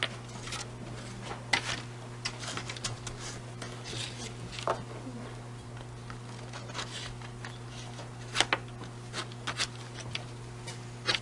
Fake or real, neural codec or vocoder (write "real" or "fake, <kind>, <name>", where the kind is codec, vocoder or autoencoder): real